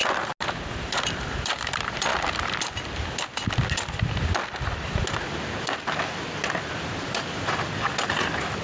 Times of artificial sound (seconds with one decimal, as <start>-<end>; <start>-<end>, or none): 0.7-2.1; 6.9-8.6